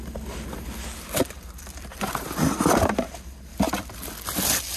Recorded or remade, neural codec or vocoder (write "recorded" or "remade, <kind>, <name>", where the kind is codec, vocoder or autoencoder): recorded